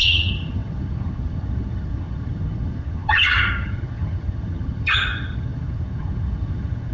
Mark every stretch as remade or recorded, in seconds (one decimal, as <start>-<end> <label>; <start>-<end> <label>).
0.0-6.9 remade